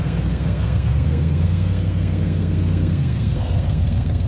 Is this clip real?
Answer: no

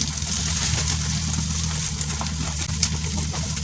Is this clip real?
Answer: yes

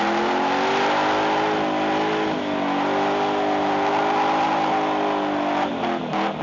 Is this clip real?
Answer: yes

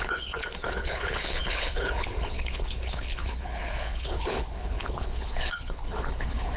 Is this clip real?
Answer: no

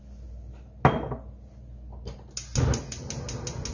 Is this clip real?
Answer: yes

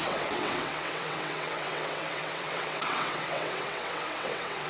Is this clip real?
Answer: no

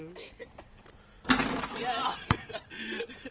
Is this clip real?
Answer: yes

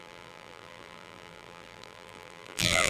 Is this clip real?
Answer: no